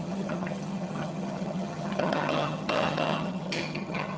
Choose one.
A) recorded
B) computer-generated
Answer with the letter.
B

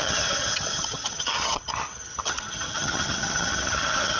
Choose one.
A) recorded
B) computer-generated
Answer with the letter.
B